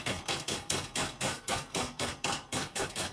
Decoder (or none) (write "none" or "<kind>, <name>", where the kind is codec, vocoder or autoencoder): codec, SNAC